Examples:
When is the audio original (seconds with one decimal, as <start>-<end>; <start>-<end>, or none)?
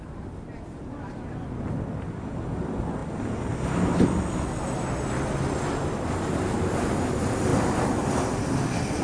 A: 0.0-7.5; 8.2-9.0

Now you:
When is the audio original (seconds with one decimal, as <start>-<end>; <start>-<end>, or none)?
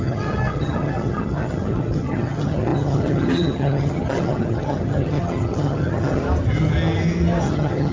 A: 6.2-7.4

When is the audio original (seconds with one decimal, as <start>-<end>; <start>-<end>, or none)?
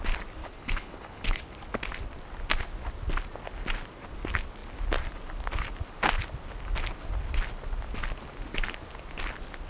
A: 0.0-0.4; 1.4-9.7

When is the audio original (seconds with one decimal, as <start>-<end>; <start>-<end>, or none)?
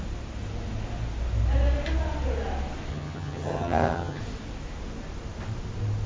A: 0.0-2.9; 4.2-6.1